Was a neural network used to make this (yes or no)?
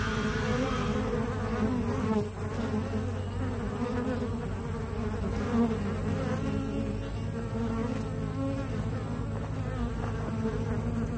no